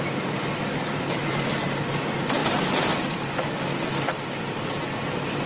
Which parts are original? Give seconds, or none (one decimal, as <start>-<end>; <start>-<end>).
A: 0.0-0.7; 1.2-5.5